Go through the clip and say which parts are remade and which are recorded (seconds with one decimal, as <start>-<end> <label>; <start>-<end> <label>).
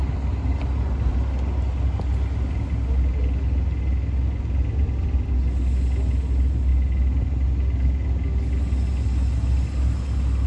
0.0-10.5 recorded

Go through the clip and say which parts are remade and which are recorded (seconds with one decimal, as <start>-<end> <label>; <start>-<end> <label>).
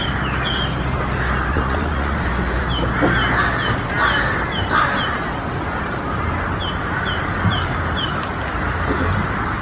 0.0-1.5 recorded; 1.5-2.6 remade; 2.6-9.6 recorded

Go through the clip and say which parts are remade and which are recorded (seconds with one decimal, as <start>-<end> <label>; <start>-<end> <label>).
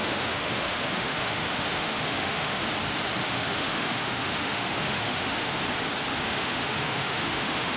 0.0-2.6 remade; 2.6-3.2 recorded; 3.2-5.6 remade; 5.6-6.1 recorded; 6.1-7.8 remade